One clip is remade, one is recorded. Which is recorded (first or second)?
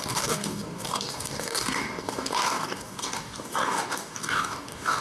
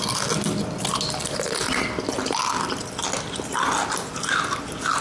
second